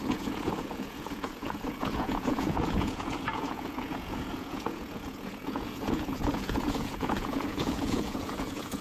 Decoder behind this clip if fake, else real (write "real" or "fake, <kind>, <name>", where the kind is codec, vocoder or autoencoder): fake, vocoder, Vocos